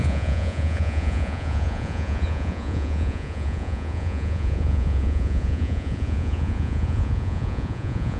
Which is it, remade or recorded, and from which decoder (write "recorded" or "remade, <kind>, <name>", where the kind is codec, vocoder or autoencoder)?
remade, vocoder, Vocos